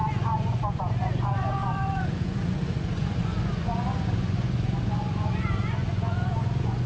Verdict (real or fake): fake